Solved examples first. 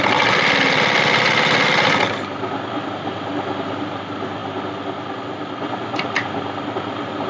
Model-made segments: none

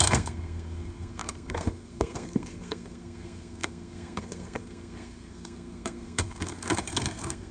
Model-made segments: 0.0-7.5 (codec, SNAC)

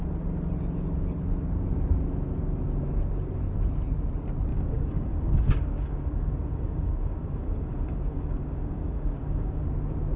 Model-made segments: 4.5-9.7 (codec, DAC)

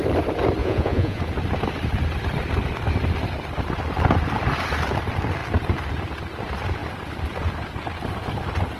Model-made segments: 0.6-1.2 (vocoder, Vocos)

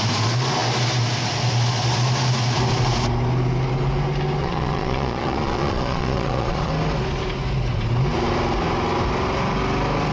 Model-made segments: 4.4-6.7 (vocoder, Vocos)

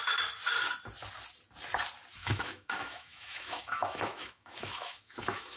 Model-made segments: 2.2-5.6 (autoencoder, DAC-VAE)

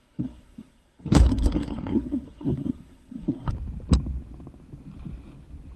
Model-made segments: 0.0-3.5 (codec, SNAC)